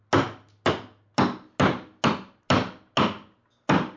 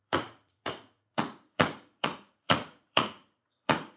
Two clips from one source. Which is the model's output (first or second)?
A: second